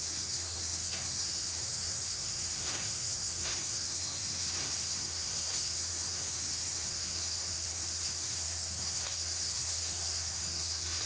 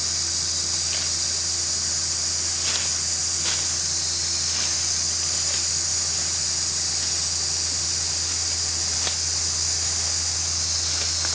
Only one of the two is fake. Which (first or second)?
first